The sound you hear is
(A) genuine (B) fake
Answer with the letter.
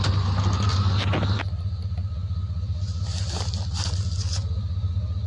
A